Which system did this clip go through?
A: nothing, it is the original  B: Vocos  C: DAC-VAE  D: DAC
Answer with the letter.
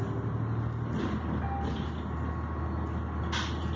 A